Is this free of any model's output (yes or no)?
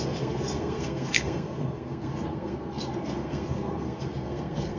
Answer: no